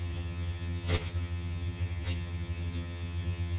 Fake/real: fake